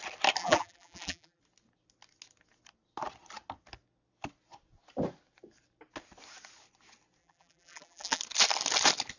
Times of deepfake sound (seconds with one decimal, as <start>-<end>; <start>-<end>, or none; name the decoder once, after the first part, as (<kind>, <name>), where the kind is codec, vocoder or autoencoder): 0.4-1.4 (vocoder, BigVGAN v2); 7.2-8.2